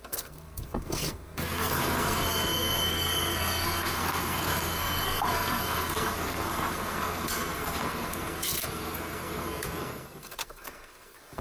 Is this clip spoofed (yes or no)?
yes